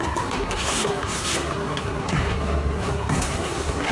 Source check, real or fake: fake